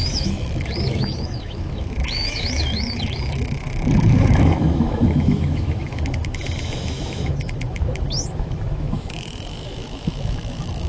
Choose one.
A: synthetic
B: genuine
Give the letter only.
A